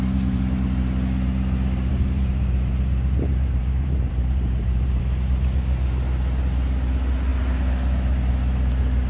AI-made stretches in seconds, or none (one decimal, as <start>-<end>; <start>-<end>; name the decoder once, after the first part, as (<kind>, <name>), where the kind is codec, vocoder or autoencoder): 1.9-5.0 (vocoder, BigVGAN v2)